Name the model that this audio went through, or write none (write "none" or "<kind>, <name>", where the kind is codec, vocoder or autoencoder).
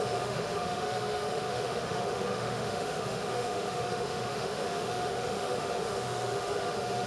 autoencoder, DAC-VAE